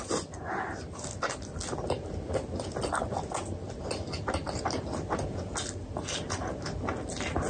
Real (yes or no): yes